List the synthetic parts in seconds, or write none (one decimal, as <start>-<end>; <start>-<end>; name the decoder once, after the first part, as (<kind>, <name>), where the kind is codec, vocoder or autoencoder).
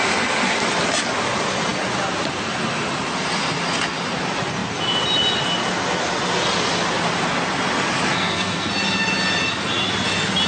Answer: 8.1-8.7 (codec, SNAC)